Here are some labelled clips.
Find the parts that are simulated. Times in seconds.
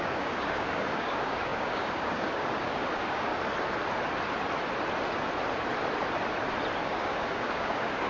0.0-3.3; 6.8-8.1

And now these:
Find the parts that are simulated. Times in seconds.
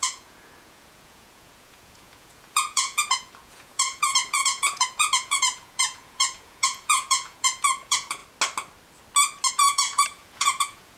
0.0-8.2; 9.5-11.0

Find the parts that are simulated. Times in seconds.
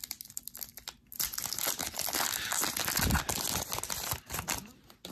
none